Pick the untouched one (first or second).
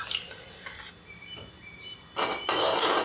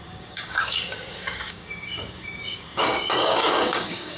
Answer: first